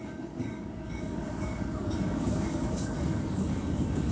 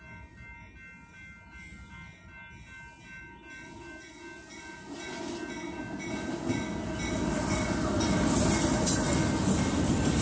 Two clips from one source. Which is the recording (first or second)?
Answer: second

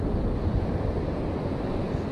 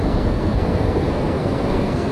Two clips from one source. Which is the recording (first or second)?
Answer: first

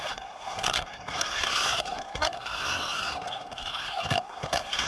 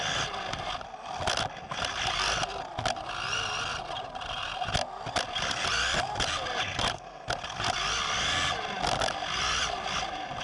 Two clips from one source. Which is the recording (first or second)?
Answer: second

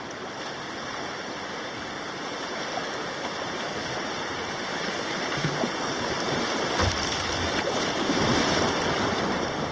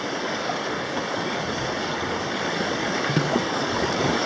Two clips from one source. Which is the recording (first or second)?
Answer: first